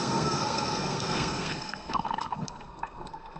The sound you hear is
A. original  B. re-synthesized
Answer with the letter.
B